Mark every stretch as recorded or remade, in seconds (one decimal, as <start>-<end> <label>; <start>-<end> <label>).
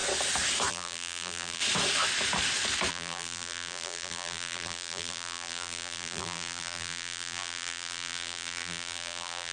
0.0-0.7 recorded; 0.7-1.6 remade; 1.6-2.9 recorded; 2.9-9.5 remade